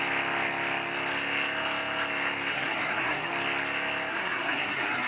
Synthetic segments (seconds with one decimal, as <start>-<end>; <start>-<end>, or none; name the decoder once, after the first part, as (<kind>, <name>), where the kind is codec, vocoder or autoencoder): 2.5-3.3 (codec, SNAC); 4.1-5.1